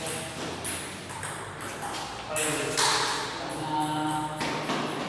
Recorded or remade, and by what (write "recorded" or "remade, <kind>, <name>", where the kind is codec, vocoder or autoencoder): recorded